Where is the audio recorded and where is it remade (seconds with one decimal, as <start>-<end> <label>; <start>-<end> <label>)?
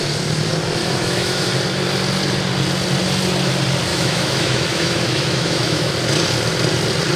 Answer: 0.0-0.8 recorded; 0.8-1.5 remade; 1.5-3.9 recorded; 3.9-5.9 remade; 5.9-7.2 recorded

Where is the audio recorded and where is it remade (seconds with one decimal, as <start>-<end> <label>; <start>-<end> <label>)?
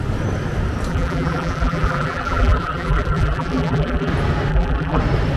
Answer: 0.0-0.9 recorded; 0.9-4.1 remade; 4.1-4.5 recorded; 4.5-5.0 remade; 5.0-5.4 recorded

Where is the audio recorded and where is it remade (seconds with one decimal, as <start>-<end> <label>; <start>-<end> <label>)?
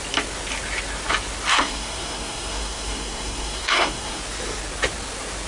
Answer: 0.0-1.5 recorded; 1.5-4.2 remade; 4.2-5.5 recorded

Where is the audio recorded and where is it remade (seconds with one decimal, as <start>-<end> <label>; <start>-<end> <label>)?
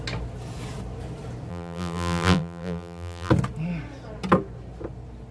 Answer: 0.0-1.5 recorded; 1.5-3.3 remade; 3.3-5.3 recorded